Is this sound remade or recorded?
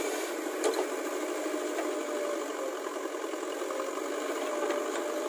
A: recorded